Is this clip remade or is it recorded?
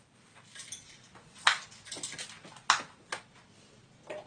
recorded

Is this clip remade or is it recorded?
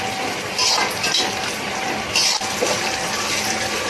recorded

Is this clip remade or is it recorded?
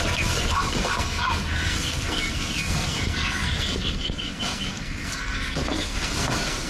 remade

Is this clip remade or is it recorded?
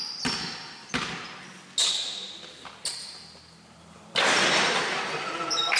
recorded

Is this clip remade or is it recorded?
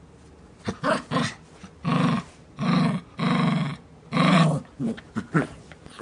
recorded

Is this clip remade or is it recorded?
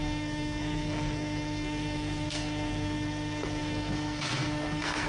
remade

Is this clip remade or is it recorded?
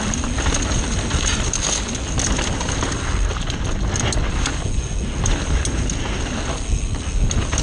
recorded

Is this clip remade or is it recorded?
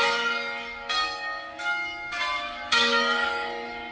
remade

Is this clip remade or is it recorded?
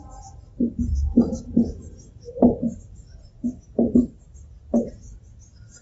remade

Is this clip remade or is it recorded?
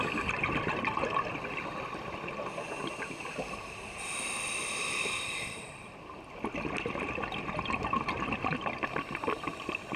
recorded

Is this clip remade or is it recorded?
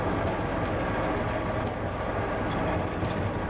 recorded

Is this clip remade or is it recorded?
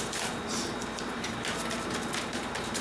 recorded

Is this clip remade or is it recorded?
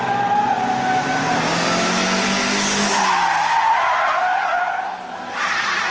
recorded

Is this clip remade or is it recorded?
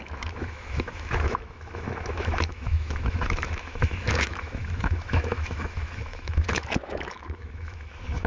remade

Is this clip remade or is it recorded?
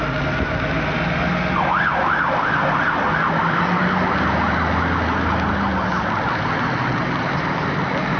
recorded